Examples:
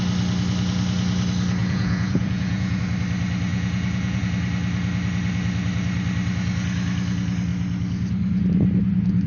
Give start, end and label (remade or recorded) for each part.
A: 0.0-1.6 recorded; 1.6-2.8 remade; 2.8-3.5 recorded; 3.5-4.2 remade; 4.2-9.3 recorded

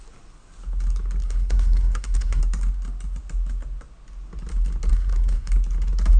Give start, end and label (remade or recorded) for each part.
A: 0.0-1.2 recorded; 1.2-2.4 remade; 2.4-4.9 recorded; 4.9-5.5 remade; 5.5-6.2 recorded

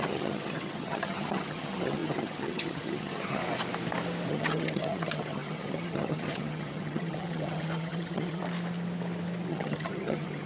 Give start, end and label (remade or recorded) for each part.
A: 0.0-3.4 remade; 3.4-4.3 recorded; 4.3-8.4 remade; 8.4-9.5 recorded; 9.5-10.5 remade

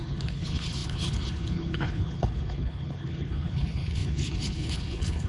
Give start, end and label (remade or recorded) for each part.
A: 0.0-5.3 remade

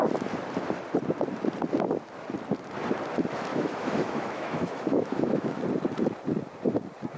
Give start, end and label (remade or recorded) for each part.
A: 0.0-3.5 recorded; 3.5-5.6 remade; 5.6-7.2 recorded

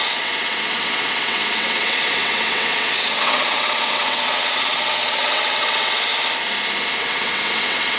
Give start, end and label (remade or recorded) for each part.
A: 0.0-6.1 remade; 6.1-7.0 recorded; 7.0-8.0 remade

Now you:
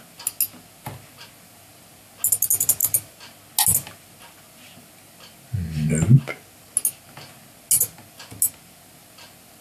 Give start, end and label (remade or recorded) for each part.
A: 0.0-9.6 recorded

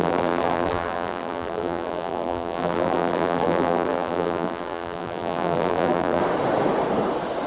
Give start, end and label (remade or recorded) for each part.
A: 0.0-6.2 remade; 6.2-7.5 recorded